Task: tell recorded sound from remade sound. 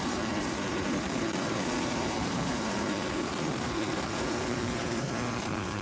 remade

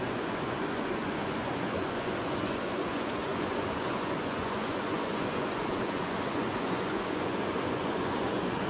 remade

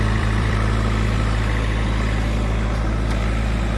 remade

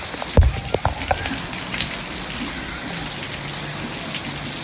recorded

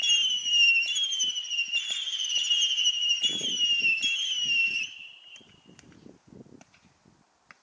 recorded